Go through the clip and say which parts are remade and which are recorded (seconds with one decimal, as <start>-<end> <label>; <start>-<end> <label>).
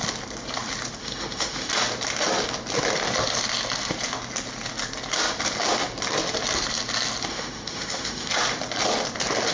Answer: 0.0-1.0 recorded; 1.0-1.7 remade; 1.7-7.3 recorded; 7.3-8.3 remade; 8.3-9.5 recorded